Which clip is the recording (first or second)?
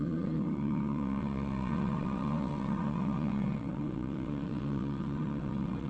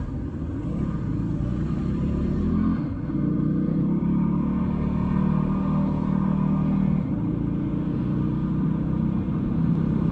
second